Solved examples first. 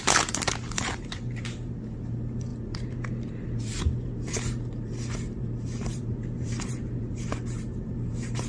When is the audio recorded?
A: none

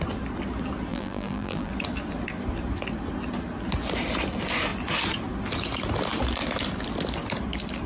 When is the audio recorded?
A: 0.0-0.9; 1.7-7.9

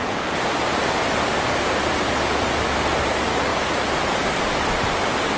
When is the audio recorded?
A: 0.0-3.5; 4.4-5.4

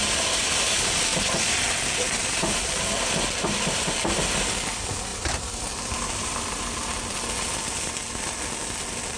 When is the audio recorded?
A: 0.0-1.1; 1.6-2.2; 3.1-5.1; 7.0-9.2

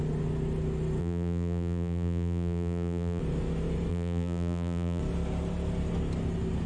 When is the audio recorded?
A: 0.0-1.0; 3.2-3.9; 5.0-6.7

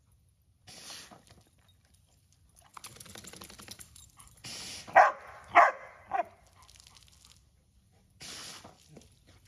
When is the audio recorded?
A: 0.0-2.7; 3.4-9.5

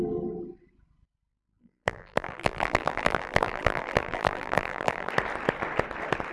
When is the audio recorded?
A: 0.0-1.3; 5.1-6.3

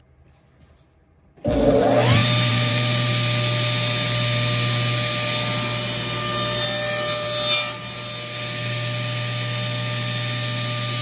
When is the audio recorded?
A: 0.0-2.2; 3.1-11.0